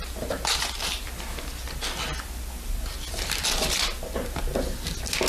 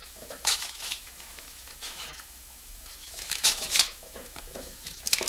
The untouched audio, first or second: first